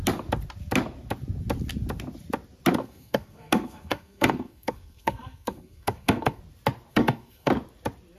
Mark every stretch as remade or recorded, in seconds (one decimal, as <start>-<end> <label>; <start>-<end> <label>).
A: 0.0-2.8 recorded; 2.8-6.4 remade; 6.4-6.9 recorded; 6.9-7.5 remade; 7.5-8.2 recorded

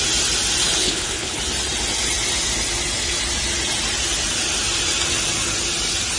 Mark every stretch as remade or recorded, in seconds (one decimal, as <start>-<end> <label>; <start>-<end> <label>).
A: 0.0-0.8 recorded; 0.8-1.4 remade; 1.4-6.2 recorded